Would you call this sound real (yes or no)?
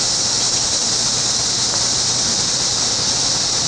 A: yes